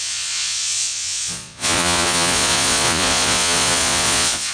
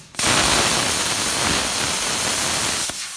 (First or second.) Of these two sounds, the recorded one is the second